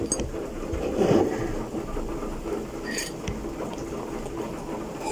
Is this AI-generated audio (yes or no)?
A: no